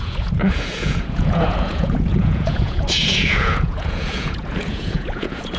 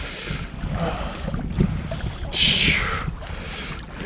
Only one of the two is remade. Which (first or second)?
first